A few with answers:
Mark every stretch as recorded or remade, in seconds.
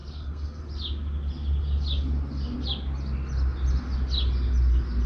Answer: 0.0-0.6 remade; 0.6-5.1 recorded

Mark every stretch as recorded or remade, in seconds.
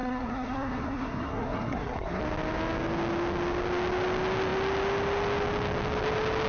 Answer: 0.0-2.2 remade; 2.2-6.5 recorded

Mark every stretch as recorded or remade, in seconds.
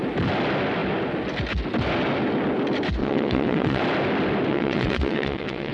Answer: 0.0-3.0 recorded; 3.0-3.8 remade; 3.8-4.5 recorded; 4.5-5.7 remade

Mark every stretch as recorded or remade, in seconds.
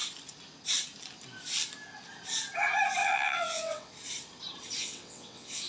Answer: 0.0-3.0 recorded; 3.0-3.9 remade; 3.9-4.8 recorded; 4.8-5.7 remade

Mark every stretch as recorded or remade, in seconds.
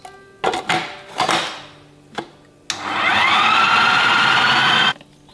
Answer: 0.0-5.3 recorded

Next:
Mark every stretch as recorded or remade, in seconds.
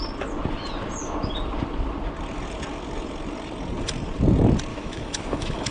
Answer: 0.0-4.7 recorded; 4.7-5.7 remade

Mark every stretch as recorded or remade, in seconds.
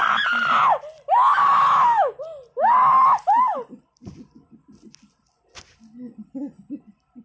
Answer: 0.0-7.2 recorded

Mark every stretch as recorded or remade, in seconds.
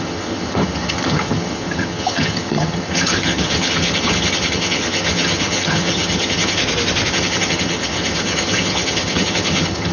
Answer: 0.0-6.6 remade; 6.6-7.1 recorded; 7.1-9.9 remade